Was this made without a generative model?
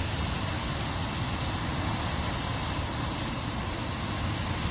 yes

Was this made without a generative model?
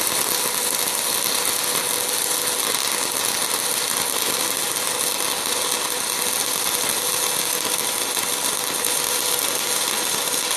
yes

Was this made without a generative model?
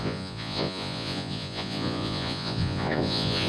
no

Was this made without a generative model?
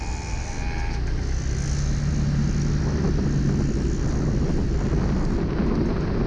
yes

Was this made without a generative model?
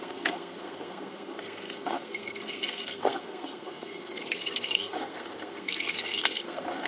no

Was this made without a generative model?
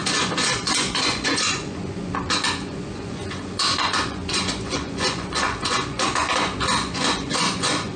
no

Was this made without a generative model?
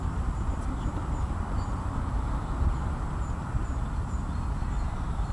yes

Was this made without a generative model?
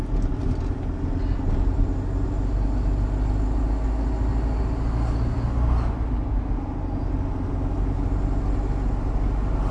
yes